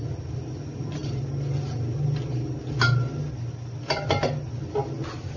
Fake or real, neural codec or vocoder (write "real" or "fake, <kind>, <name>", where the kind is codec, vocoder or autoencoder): real